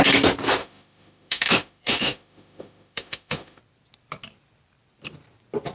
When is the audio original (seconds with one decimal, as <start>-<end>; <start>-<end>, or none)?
0.0-0.6; 3.6-5.7

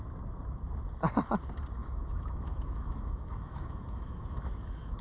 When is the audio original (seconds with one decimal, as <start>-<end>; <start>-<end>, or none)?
0.0-1.8

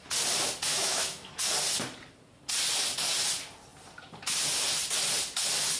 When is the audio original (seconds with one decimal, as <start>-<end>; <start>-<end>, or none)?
0.0-0.7; 1.3-5.8

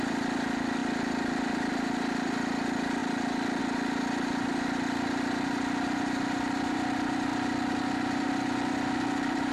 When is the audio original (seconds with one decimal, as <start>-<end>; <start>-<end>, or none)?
0.0-9.5